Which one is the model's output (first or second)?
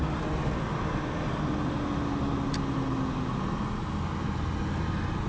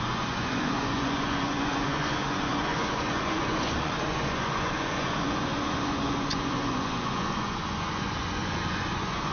second